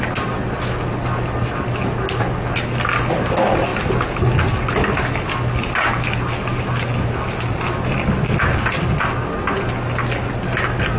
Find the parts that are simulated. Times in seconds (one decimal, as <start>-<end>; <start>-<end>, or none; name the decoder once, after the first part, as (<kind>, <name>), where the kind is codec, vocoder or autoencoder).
none